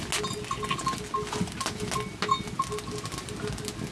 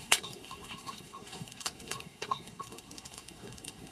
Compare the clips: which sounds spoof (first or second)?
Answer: second